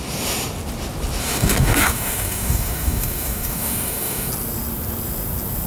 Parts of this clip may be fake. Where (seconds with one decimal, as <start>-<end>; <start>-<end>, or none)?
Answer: 1.2-4.3

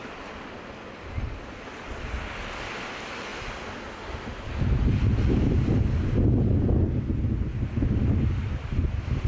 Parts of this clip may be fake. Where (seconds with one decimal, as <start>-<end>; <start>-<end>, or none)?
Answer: none

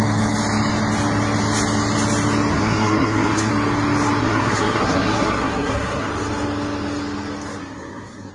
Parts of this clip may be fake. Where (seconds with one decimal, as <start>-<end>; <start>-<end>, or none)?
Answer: 2.5-3.5; 4.2-6.1; 7.6-8.3

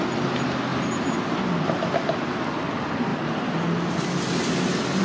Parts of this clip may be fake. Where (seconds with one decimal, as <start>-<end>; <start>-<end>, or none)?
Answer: none